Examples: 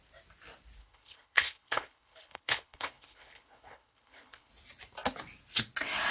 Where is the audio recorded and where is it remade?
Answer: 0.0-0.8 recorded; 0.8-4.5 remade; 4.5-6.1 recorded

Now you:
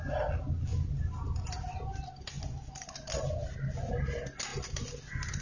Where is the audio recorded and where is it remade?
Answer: 0.0-5.4 recorded

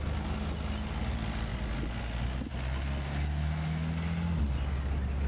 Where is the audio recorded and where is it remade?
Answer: 0.0-5.3 recorded

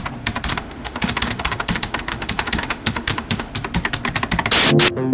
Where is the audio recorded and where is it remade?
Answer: 0.0-0.5 recorded; 0.5-3.5 remade; 3.5-5.1 recorded

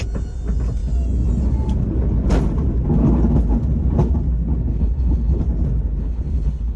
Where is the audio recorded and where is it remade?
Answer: 0.0-4.7 recorded; 4.7-5.4 remade; 5.4-6.0 recorded; 6.0-6.8 remade

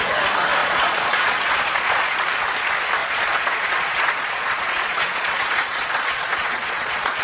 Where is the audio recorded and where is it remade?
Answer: 0.0-0.6 recorded; 0.6-2.2 remade; 2.2-3.0 recorded; 3.0-7.2 remade

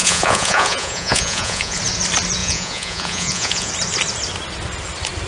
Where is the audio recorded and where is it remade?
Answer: 0.0-1.8 remade; 1.8-2.4 recorded; 2.4-3.7 remade; 3.7-5.3 recorded

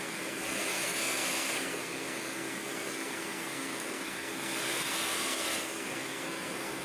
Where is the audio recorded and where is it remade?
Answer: 0.0-6.8 remade